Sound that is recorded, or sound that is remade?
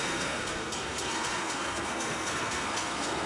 remade